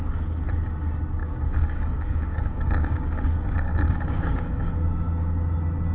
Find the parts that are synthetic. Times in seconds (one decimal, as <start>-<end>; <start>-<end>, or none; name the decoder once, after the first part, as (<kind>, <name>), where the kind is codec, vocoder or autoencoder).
1.2-4.7 (codec, DAC)